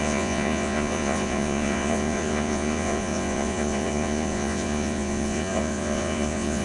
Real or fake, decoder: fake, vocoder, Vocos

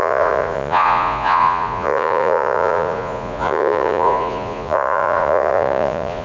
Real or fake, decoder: fake, vocoder, Vocos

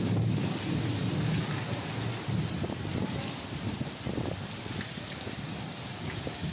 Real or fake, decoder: real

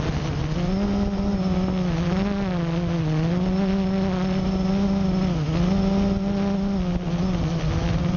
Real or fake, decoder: real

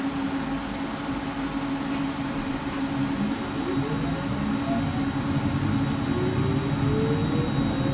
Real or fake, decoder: real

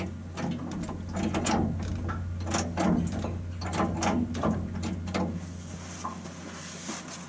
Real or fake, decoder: real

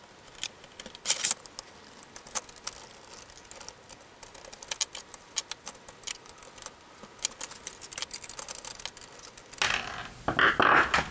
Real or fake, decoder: real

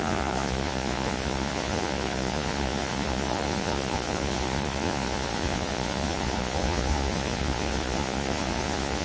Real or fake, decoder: fake, vocoder, Vocos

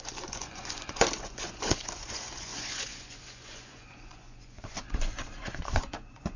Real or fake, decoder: fake, vocoder, Vocos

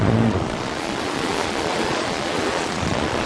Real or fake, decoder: fake, vocoder, Vocos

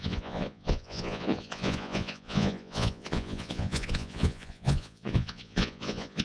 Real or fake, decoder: fake, vocoder, Vocos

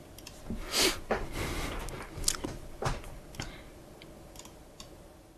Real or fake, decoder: real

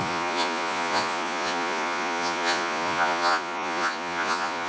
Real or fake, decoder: fake, vocoder, Vocos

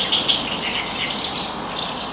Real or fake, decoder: real